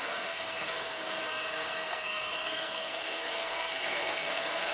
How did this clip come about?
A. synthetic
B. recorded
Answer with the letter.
A